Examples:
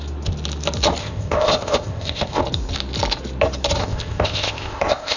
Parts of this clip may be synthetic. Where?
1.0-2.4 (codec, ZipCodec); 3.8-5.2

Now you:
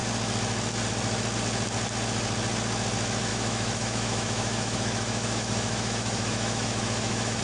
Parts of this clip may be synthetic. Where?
3.3-7.4 (autoencoder, DAC-VAE)

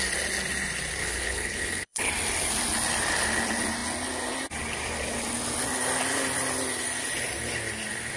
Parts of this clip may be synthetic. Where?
1.0-2.1 (codec, HILCodec)

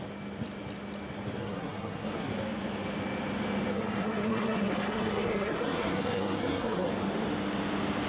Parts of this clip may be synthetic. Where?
1.4-2.3 (codec, SNAC); 3.7-6.9

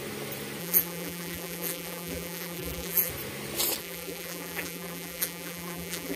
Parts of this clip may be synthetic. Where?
0.6-3.1 (vocoder, BigVGAN v2); 3.8-6.2

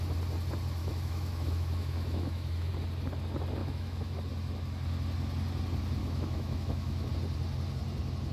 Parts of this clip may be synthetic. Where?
0.8-2.7 (autoencoder, DAC-VAE); 3.6-4.2; 6.0-7.1

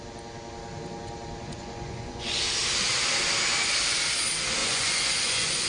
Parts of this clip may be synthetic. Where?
1.4-2.4 (vocoder, Vocos); 4.6-5.7